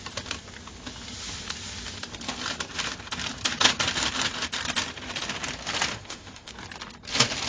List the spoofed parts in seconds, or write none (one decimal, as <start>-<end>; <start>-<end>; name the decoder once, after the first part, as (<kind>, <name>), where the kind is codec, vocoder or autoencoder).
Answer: 5.9-6.5 (autoencoder, DAC-VAE)